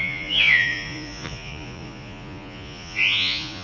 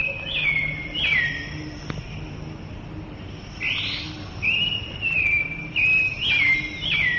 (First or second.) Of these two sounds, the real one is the second